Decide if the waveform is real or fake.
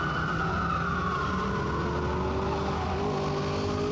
real